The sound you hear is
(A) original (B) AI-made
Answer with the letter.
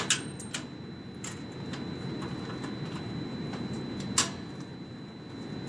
A